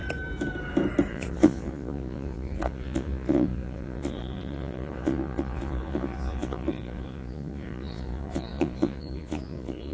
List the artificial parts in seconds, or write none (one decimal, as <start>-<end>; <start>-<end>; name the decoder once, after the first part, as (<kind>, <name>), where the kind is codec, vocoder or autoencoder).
1.1-9.9 (vocoder, Vocos)